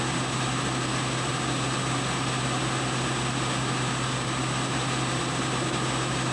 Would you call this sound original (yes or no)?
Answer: yes